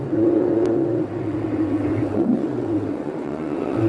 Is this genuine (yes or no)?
no